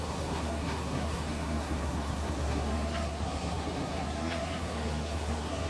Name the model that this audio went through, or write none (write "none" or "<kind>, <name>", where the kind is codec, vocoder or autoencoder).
codec, SNAC